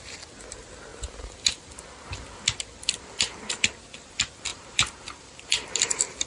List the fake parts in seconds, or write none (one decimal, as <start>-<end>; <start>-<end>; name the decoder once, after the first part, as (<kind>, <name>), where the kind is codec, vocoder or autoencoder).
4.5-6.3 (vocoder, BigVGAN v2)